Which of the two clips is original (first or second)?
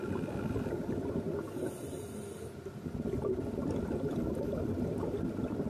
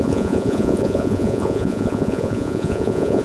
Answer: first